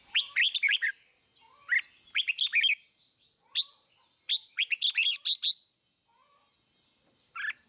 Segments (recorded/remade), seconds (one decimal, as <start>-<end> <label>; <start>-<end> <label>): 0.0-7.7 recorded